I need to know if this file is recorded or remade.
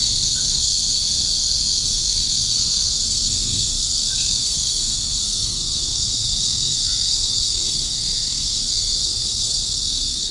remade